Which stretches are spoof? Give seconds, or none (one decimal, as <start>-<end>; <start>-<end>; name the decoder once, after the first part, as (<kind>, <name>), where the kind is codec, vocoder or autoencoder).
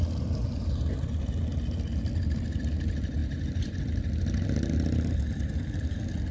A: none